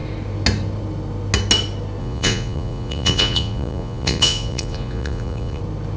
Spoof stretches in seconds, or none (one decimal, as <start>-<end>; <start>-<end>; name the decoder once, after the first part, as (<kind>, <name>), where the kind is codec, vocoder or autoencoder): 2.0-5.6 (vocoder, Vocos)

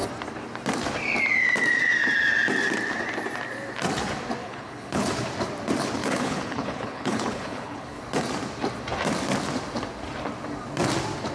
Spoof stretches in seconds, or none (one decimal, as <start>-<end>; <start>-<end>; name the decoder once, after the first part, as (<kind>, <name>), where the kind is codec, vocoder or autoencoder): 4.4-5.1 (codec, HILCodec); 6.0-8.0